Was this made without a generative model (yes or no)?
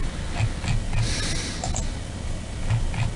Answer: yes